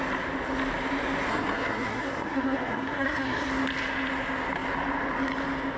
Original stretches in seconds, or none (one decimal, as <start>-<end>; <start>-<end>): 0.0-1.3; 3.5-5.8